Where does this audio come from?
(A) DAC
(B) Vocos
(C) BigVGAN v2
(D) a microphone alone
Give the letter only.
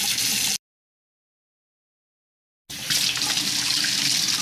D